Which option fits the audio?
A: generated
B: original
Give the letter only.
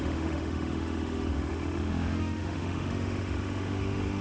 A